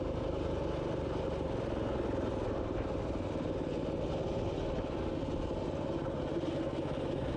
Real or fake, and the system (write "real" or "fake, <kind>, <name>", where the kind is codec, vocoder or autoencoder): real